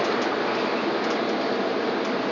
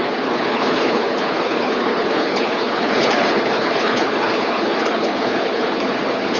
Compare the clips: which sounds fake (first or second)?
second